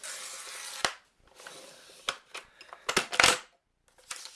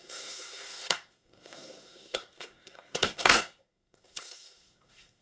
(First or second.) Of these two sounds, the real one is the first